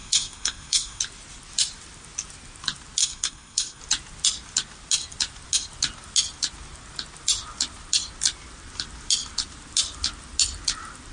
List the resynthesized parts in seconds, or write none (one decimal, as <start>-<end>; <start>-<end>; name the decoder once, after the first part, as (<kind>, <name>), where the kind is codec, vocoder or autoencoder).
0.0-1.0 (codec, SNAC); 3.0-3.8